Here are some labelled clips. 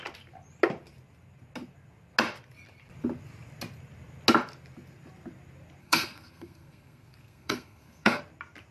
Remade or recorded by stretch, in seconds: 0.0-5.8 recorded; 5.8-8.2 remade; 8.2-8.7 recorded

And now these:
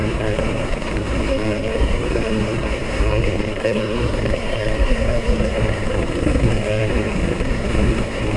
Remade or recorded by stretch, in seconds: 0.0-8.4 remade

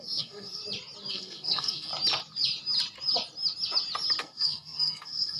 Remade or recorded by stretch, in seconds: 0.0-0.6 remade; 0.6-1.1 recorded; 1.1-1.9 remade; 1.9-4.2 recorded; 4.2-5.4 remade

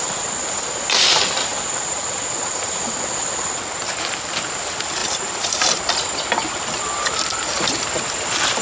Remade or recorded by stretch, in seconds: 0.0-8.6 recorded

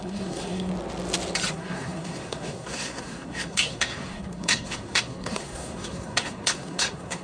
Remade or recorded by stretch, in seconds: 0.0-0.7 remade; 0.7-1.5 recorded; 1.5-7.2 remade

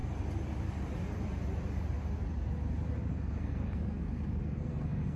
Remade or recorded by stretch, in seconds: 0.0-3.1 recorded; 3.1-5.2 remade

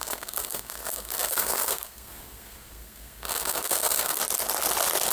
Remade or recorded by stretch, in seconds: 0.0-4.2 remade; 4.2-5.1 recorded

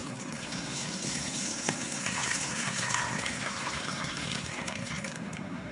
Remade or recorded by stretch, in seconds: 0.0-5.7 remade